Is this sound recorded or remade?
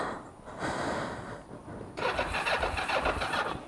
recorded